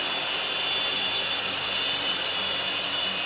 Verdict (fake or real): fake